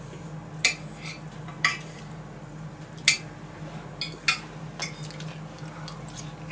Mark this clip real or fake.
real